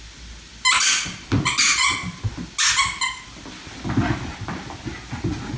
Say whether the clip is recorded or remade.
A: recorded